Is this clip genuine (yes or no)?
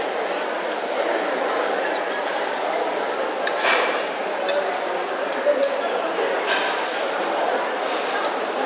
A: yes